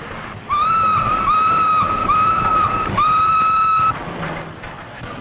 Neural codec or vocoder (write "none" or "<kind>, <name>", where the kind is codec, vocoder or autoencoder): none